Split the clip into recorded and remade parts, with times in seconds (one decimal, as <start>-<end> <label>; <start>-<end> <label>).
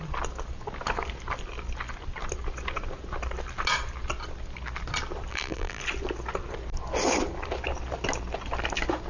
0.0-5.3 recorded; 5.3-5.8 remade; 5.8-9.1 recorded